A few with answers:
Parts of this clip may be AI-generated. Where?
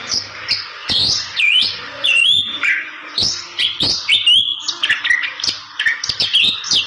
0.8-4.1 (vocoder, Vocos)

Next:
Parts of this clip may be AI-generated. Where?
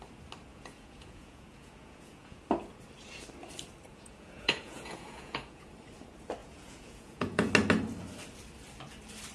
0.5-2.4 (vocoder, Vocos); 3.9-5.7; 6.4-7.5